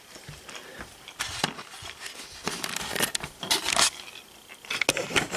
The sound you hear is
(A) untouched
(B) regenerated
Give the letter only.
A